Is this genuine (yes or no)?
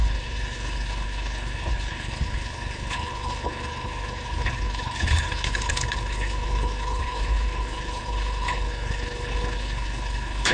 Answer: no